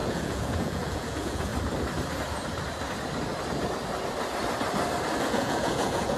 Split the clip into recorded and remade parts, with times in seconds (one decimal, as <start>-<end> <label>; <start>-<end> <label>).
0.0-1.5 remade; 1.5-5.2 recorded; 5.2-6.2 remade